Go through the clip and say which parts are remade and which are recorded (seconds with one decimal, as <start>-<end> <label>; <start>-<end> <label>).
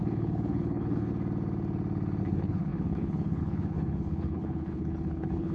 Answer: 0.0-1.1 remade; 1.1-2.2 recorded; 2.2-5.5 remade